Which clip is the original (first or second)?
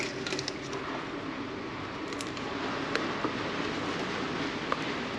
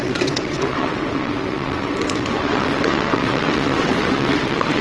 first